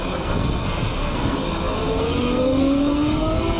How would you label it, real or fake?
fake